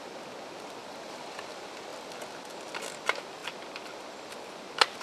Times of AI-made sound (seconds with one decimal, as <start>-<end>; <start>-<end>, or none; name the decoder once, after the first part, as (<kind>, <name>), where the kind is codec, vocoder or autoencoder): 0.8-1.5 (vocoder, BigVGAN v2)